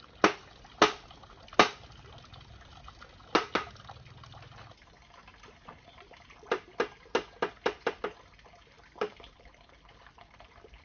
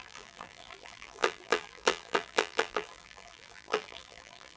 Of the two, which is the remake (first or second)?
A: second